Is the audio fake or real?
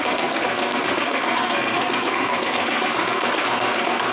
fake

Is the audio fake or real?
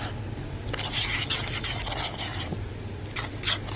real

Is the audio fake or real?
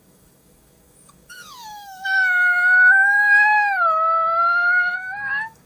fake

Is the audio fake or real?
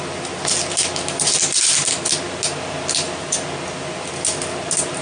real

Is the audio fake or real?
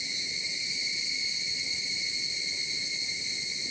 real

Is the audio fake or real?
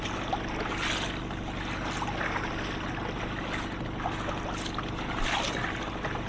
real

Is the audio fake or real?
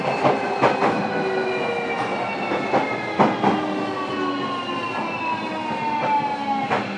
real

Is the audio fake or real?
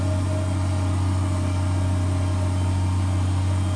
real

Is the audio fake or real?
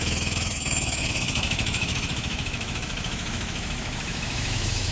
fake